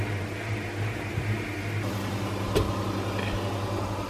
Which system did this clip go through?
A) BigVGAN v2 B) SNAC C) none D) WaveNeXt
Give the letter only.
C